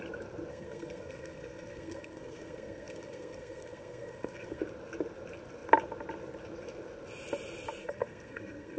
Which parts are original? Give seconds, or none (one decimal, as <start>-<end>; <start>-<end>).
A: 0.0-0.5; 4.6-7.8